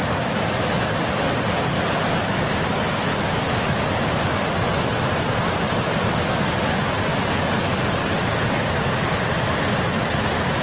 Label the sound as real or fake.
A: real